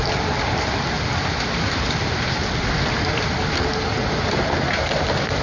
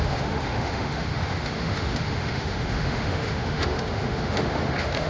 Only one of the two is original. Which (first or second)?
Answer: first